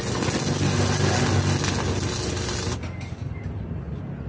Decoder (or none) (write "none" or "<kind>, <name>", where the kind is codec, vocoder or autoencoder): none